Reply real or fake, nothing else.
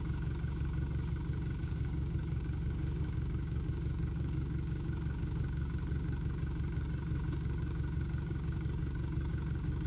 fake